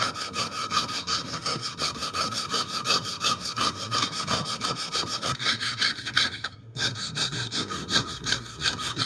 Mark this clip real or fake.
fake